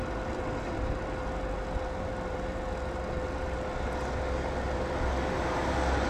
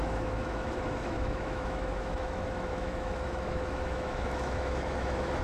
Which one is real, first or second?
first